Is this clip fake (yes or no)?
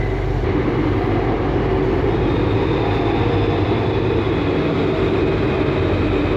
no